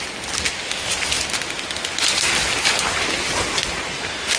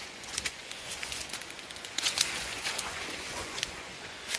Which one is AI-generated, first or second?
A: second